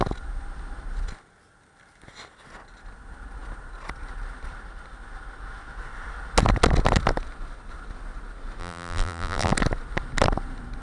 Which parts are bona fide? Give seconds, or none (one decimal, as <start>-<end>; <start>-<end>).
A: 0.0-8.6; 9.5-10.8